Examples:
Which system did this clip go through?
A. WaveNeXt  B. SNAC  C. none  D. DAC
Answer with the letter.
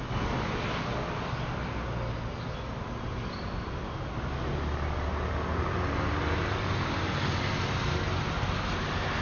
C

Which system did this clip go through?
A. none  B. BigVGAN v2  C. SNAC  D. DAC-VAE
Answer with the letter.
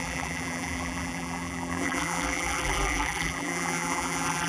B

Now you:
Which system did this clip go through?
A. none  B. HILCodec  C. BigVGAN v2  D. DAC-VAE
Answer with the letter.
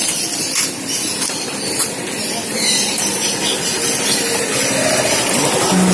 A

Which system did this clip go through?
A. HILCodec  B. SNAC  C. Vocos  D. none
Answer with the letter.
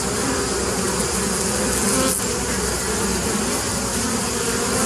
D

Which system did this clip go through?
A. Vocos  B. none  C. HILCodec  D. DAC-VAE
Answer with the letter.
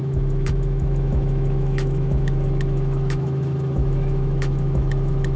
D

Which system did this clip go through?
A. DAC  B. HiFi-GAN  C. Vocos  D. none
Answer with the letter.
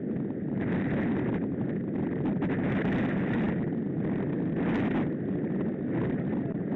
D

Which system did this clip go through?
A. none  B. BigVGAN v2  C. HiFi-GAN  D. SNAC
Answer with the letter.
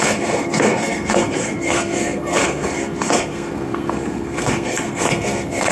D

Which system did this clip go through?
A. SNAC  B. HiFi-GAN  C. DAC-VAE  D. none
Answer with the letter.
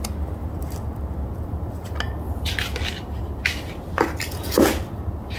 D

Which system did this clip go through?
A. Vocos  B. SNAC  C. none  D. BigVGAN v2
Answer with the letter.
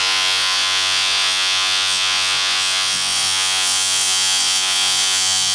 A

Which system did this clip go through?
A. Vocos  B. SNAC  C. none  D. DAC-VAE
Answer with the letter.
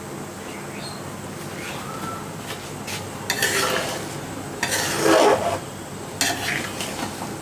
C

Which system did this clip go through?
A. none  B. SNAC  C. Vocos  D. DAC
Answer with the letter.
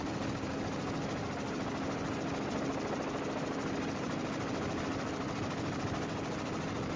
A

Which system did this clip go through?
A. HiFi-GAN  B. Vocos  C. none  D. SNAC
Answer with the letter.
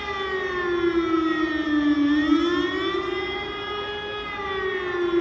C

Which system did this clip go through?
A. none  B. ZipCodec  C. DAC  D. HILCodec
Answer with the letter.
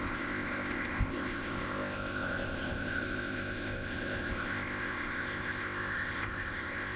B